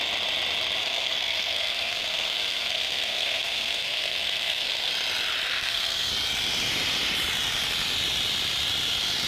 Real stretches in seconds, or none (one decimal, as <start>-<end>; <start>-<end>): 0.0-0.8; 4.9-5.5; 6.1-9.3